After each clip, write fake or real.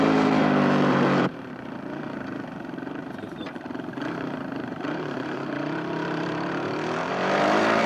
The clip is fake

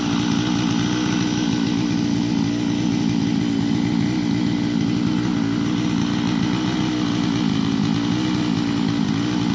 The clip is real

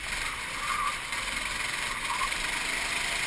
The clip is fake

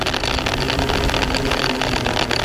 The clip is real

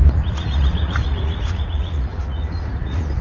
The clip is fake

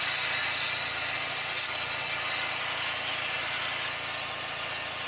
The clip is real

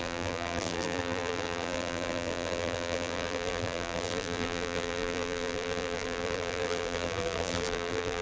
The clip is fake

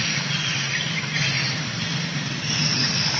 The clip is real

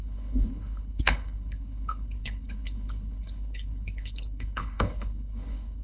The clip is fake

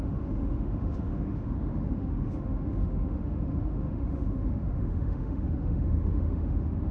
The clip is fake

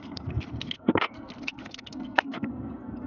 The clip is fake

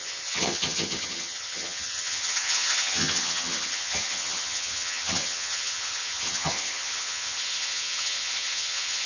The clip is fake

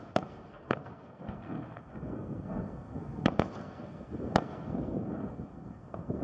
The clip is fake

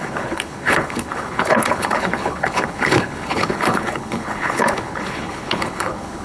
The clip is fake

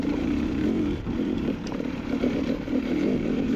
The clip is fake